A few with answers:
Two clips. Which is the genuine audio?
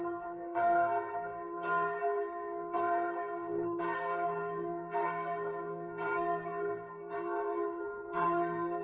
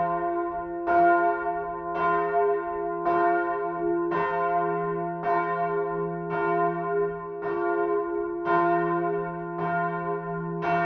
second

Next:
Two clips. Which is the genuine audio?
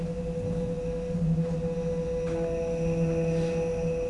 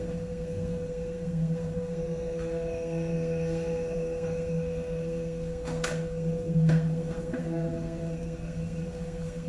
first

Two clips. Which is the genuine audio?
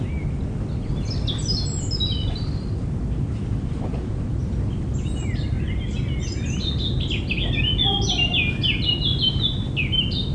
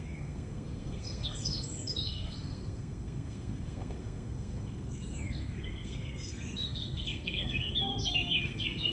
first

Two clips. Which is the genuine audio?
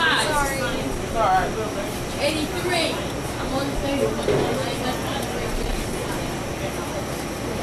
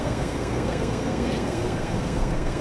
first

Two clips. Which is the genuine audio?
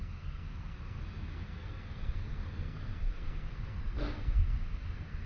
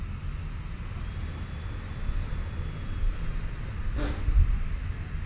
second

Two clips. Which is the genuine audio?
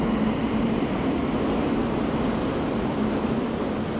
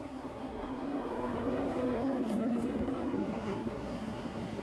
first